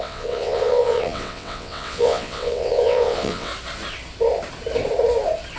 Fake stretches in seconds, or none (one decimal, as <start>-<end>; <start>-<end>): 0.0-3.5